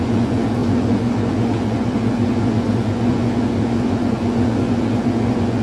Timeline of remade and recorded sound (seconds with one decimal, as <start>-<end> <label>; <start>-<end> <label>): 0.0-5.6 remade